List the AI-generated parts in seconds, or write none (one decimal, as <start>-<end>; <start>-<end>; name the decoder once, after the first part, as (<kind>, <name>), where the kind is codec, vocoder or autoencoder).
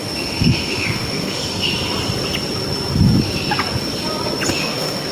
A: 0.0-1.4 (autoencoder, DAC-VAE); 4.5-5.1